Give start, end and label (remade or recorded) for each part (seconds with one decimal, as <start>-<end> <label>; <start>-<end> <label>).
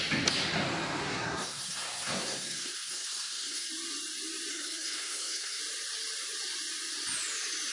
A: 0.0-1.0 recorded; 1.0-3.7 remade; 3.7-4.5 recorded; 4.5-5.6 remade; 5.6-7.7 recorded